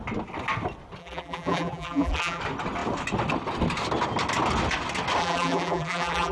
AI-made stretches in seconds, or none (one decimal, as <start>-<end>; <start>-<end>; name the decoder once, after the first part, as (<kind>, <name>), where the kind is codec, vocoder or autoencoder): 1.0-2.4 (vocoder, BigVGAN v2); 5.2-6.3